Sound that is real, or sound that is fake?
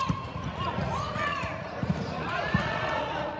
fake